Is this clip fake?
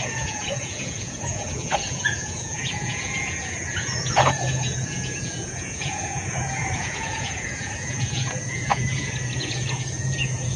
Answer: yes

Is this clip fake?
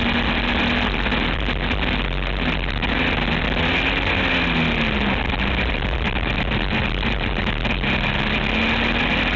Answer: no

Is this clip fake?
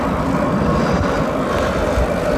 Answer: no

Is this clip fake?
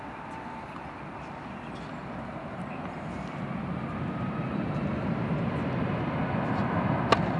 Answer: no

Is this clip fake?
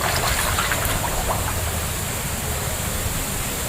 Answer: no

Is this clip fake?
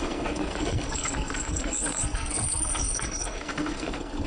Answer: yes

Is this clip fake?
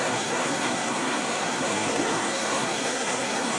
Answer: yes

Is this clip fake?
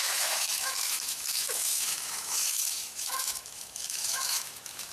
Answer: yes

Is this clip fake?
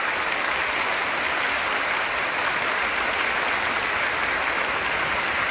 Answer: no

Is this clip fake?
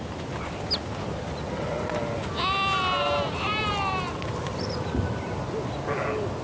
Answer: no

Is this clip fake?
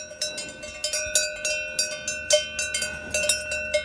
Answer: no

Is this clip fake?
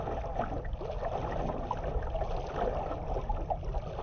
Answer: no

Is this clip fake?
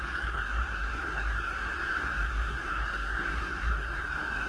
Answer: yes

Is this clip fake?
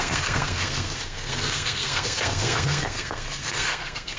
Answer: yes